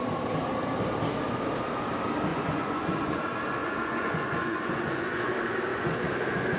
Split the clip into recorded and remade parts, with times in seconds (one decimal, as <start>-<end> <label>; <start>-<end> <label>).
0.0-2.3 recorded; 2.3-3.2 remade; 3.2-3.6 recorded; 3.6-5.3 remade; 5.3-5.7 recorded; 5.7-6.6 remade